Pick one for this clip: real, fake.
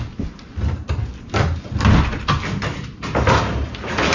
real